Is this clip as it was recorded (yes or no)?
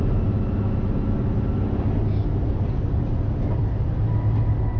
yes